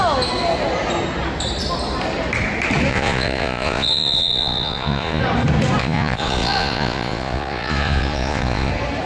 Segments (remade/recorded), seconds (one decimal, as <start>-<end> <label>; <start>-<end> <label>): 0.0-2.9 recorded; 2.9-5.2 remade; 5.2-5.8 recorded; 5.8-8.7 remade; 8.7-9.1 recorded